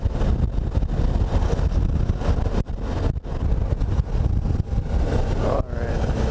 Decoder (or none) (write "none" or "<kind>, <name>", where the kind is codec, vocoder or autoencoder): none